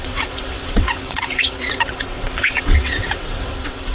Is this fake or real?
fake